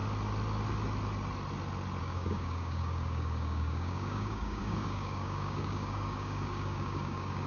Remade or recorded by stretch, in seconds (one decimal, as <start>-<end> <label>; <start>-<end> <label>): 0.0-2.0 recorded; 2.0-7.5 remade